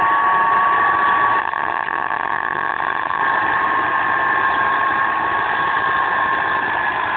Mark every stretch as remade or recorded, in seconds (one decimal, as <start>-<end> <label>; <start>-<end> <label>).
0.0-1.4 recorded; 1.4-3.2 remade; 3.2-7.2 recorded